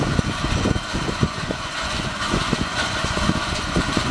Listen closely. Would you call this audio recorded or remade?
remade